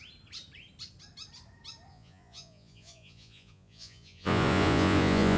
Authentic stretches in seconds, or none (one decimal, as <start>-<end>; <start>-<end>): 0.0-1.9